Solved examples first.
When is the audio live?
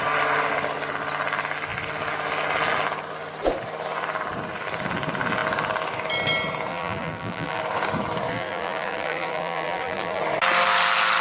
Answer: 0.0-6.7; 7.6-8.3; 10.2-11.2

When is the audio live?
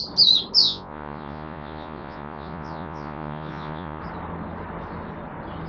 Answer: 0.0-0.6; 4.0-5.7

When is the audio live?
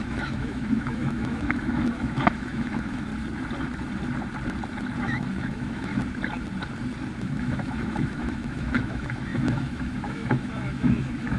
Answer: 3.1-5.0; 5.9-7.2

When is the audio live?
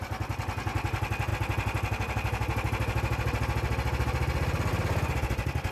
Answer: 0.0-5.7